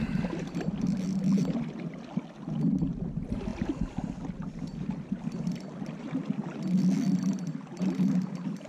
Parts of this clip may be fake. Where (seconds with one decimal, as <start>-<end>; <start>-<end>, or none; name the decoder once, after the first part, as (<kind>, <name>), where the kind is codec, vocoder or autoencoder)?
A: none